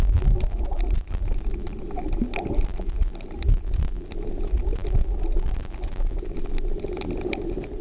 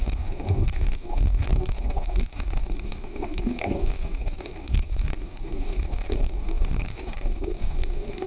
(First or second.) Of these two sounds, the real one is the first